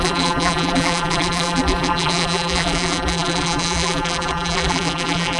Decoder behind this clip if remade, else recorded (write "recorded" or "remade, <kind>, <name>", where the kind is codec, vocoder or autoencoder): remade, vocoder, BigVGAN v2